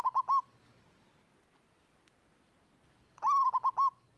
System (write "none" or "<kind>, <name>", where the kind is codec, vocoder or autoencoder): none